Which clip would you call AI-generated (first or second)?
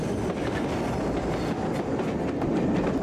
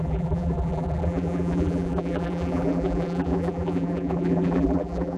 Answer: second